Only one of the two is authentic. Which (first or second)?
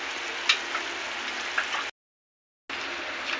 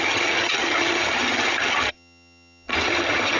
first